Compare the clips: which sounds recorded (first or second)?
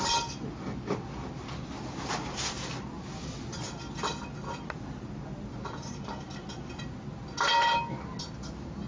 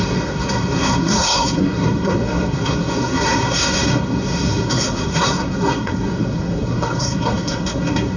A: first